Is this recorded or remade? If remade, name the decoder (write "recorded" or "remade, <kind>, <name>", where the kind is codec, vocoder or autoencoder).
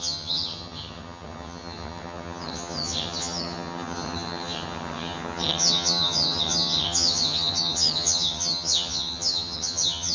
remade, vocoder, HiFi-GAN